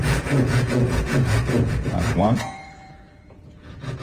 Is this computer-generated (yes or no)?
yes